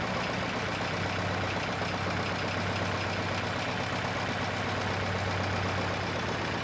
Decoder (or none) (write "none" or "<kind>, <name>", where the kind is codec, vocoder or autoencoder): none